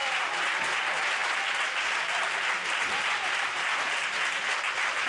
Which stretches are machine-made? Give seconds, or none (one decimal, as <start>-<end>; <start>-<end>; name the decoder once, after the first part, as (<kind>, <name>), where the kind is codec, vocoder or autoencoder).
none